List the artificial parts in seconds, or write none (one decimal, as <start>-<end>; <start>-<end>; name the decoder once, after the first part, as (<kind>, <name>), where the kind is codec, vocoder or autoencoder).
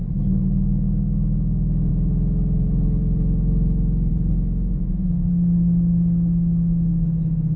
0.0-1.9 (autoencoder, DAC-VAE); 4.1-7.6